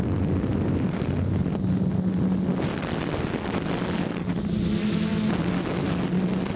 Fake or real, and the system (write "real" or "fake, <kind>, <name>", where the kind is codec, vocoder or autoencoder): real